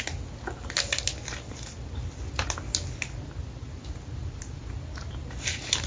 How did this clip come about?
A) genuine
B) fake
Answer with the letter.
A